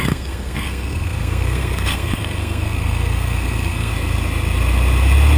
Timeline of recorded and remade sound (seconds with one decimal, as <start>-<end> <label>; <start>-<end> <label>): 0.0-3.9 remade; 3.9-5.4 recorded